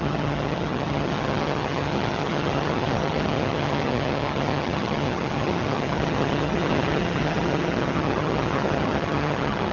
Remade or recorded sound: remade